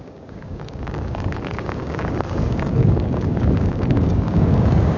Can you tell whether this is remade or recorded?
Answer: remade